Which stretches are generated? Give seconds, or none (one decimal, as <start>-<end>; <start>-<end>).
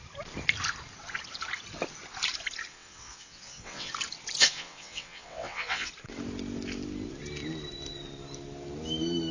2.7-3.9; 4.4-5.9